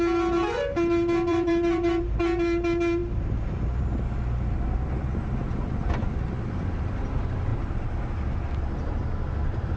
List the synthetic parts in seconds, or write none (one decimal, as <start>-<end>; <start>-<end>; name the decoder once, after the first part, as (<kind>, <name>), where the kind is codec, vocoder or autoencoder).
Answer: 1.3-2.0 (vocoder, BigVGAN v2)